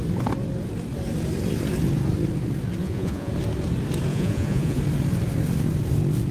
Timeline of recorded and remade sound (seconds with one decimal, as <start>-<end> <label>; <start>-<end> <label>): 0.0-2.8 recorded; 2.8-3.3 remade; 3.3-4.1 recorded; 4.1-4.8 remade; 4.8-6.3 recorded